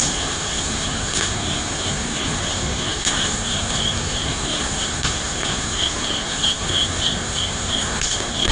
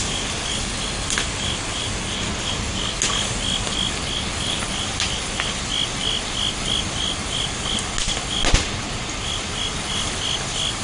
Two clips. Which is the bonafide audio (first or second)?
second